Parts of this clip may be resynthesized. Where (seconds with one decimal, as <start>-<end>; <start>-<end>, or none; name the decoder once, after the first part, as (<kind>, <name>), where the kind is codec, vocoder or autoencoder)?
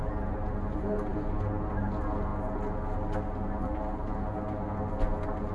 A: none